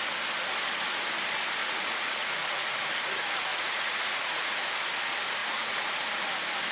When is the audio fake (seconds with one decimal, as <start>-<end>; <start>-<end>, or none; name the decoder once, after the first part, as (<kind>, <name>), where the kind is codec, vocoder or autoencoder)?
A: 1.6-2.8 (vocoder, Vocos); 3.5-4.6; 5.4-6.1